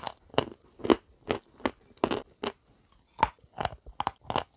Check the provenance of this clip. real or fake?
real